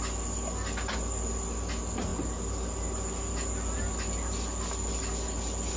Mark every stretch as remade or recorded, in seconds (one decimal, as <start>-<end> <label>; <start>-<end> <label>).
0.0-5.8 recorded